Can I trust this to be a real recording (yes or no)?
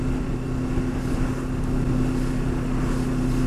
yes